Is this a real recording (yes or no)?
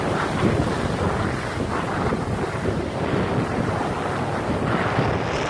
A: yes